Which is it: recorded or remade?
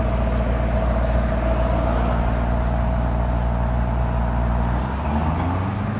recorded